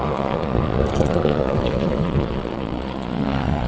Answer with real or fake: fake